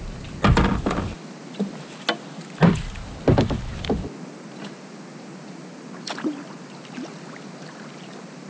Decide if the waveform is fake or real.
real